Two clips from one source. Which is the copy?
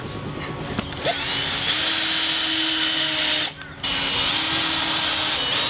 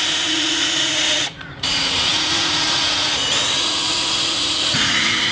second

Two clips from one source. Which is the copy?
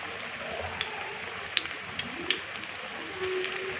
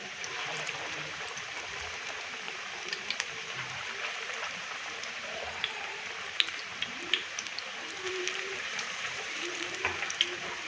second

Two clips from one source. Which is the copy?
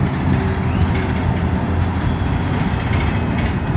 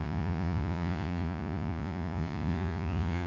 second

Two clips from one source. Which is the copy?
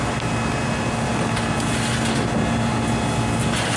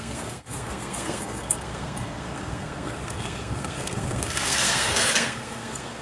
second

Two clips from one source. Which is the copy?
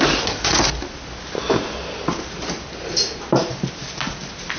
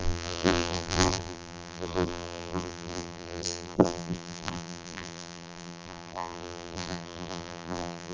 second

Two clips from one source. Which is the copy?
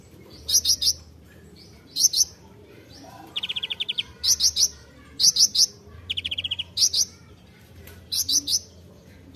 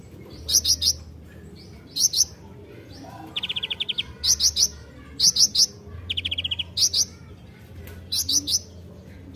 first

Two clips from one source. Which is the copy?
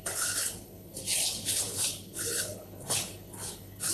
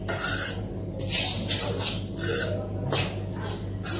first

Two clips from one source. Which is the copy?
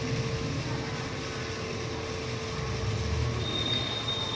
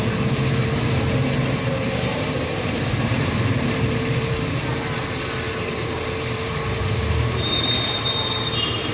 second